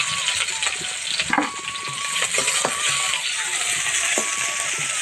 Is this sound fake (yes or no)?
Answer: no